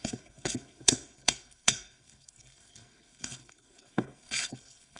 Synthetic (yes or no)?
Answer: yes